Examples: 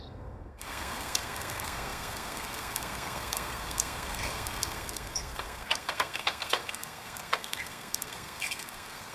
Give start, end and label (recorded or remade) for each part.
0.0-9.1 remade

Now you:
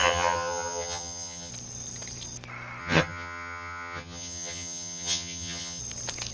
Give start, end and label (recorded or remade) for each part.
0.0-1.5 remade; 1.5-2.8 recorded; 2.8-5.8 remade; 5.8-6.3 recorded

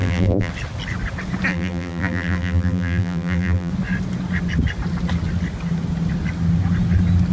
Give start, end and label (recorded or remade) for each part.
0.0-0.5 remade; 0.5-1.5 recorded; 1.5-3.7 remade; 3.7-7.3 recorded

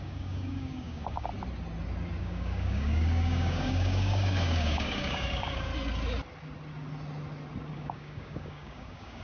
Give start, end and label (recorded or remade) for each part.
0.0-1.3 remade; 1.3-2.2 recorded; 2.2-5.7 remade; 5.7-7.7 recorded; 7.7-9.2 remade

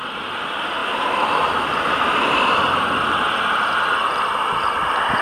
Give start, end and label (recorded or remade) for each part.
0.0-5.2 recorded

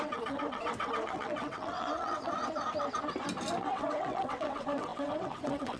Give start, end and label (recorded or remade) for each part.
0.0-2.4 remade; 2.4-3.6 recorded; 3.6-5.8 remade

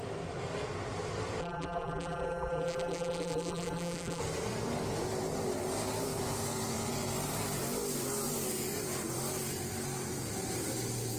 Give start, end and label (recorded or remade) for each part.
0.0-1.4 recorded; 1.4-4.2 remade; 4.2-11.2 recorded

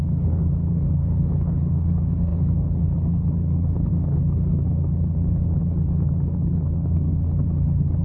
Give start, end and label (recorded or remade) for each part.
0.0-8.0 remade